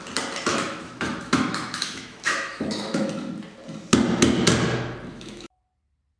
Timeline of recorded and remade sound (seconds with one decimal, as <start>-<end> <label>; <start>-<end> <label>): 0.0-0.5 recorded; 0.5-3.1 remade; 3.1-5.1 recorded; 5.1-5.6 remade; 5.6-6.2 recorded